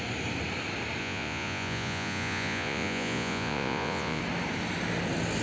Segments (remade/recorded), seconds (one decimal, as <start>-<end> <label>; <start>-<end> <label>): 0.0-1.0 recorded; 1.0-4.2 remade; 4.2-5.4 recorded